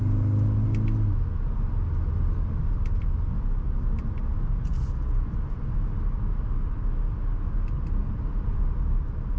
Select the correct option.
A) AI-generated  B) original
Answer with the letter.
B